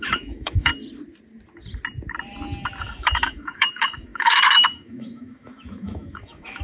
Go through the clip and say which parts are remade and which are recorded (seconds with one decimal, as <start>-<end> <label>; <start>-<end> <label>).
0.0-0.7 remade; 0.7-2.8 recorded; 2.8-6.6 remade